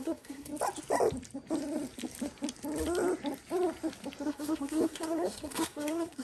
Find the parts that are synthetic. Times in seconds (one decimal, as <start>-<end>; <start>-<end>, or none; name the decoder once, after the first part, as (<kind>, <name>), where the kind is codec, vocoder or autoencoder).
0.0-0.5 (codec, SNAC); 4.2-6.2